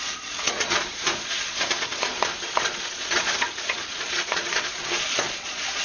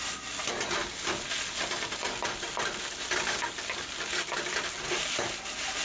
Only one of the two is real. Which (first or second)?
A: second